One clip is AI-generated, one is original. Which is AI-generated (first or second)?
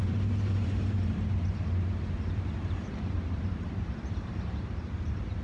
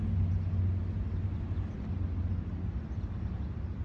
first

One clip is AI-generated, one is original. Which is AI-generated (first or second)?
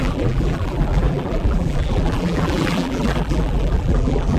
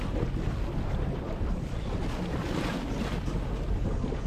first